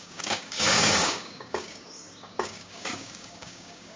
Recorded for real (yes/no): no